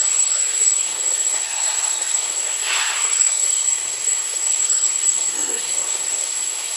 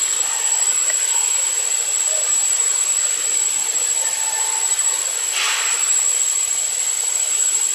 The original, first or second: second